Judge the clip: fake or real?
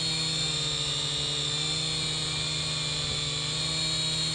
real